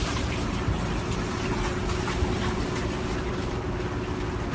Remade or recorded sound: recorded